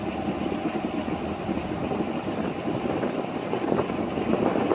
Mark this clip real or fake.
real